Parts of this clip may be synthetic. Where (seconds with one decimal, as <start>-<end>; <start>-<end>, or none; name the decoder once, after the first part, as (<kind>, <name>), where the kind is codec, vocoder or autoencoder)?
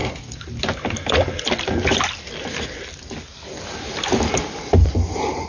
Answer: none